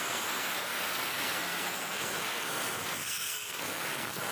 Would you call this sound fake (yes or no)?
yes